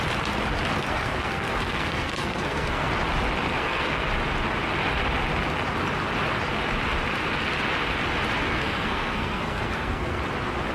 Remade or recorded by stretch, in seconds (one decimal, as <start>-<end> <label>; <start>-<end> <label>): 0.0-0.8 recorded; 0.8-2.9 remade; 2.9-3.5 recorded; 3.5-4.1 remade; 4.1-8.5 recorded; 8.5-10.2 remade; 10.2-10.7 recorded